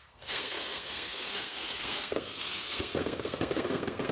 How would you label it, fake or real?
fake